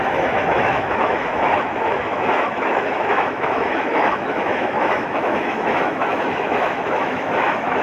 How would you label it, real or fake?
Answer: fake